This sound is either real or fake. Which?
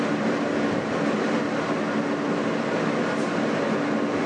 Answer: real